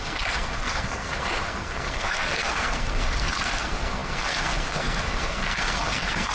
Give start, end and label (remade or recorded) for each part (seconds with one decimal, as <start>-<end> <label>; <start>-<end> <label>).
0.0-6.3 remade